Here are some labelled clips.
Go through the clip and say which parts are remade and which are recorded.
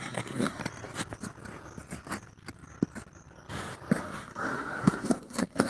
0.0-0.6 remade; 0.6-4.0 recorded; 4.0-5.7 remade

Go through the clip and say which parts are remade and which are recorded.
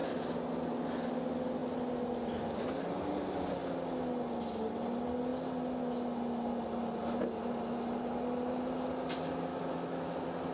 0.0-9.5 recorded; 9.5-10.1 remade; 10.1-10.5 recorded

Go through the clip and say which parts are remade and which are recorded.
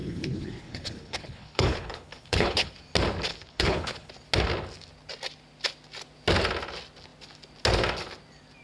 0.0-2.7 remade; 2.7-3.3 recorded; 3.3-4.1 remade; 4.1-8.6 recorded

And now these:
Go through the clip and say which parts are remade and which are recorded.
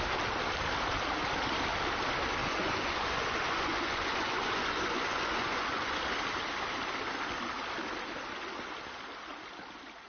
0.0-2.4 recorded; 2.4-6.0 remade; 6.0-10.1 recorded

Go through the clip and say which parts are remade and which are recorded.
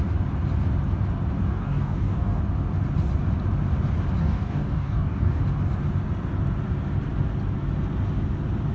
0.0-1.5 recorded; 1.5-2.4 remade; 2.4-4.2 recorded; 4.2-5.4 remade; 5.4-8.7 recorded